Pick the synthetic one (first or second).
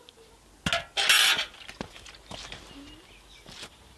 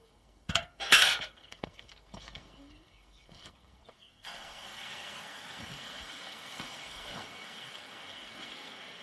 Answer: second